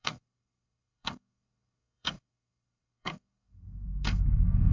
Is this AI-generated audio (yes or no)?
yes